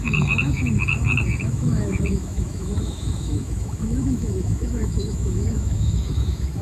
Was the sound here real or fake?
fake